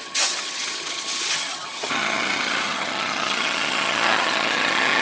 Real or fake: fake